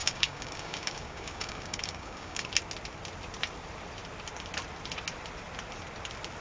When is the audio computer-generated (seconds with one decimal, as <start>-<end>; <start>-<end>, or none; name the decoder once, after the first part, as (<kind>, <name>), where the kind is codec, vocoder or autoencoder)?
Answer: 0.0-2.5 (codec, DAC)